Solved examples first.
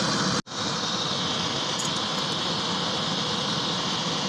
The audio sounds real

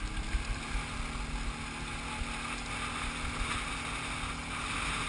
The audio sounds real